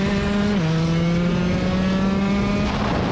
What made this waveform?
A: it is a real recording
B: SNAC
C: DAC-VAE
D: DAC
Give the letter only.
A